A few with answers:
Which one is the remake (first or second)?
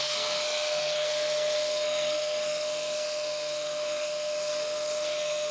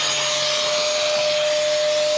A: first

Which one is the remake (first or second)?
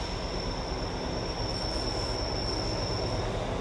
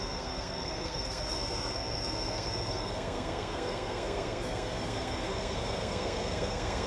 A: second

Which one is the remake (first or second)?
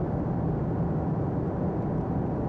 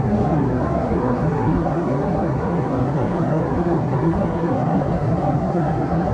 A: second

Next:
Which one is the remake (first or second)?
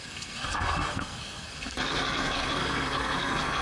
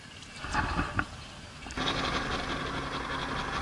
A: first